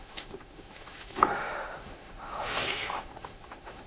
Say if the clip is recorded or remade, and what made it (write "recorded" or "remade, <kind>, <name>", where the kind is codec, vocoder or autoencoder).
remade, autoencoder, DAC-VAE